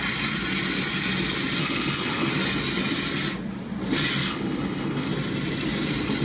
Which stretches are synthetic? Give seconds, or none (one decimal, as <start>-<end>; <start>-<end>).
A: 1.6-2.3; 4.2-5.1

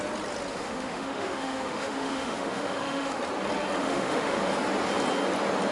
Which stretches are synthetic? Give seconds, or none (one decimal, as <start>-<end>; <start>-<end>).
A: 0.5-3.2; 3.8-4.4

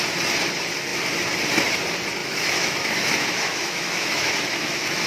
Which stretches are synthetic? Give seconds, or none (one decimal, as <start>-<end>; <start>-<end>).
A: 2.2-5.1

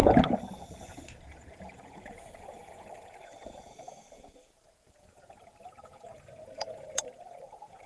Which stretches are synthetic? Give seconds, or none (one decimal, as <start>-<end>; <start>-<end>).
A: 0.8-7.9

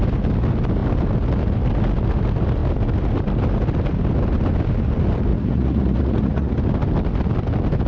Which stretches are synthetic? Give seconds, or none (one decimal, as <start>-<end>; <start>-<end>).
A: 5.3-6.5